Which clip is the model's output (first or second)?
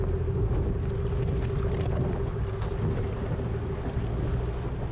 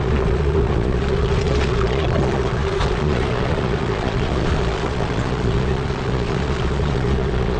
second